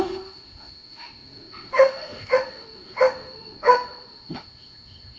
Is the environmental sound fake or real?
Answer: fake